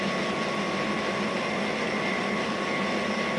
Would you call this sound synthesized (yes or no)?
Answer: no